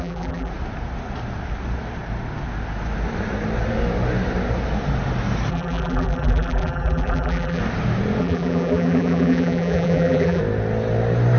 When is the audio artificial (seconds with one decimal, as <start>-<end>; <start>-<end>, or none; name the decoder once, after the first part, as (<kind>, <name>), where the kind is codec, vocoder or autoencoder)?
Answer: 0.0-0.5 (vocoder, BigVGAN v2); 5.5-7.6; 8.2-10.4